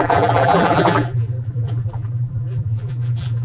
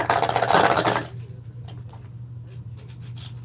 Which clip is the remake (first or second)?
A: first